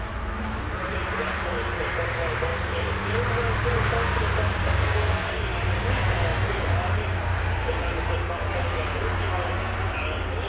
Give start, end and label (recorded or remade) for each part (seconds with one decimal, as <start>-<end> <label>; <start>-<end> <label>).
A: 0.0-4.6 recorded; 4.6-5.4 remade; 5.4-10.5 recorded